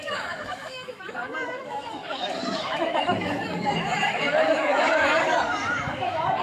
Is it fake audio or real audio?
fake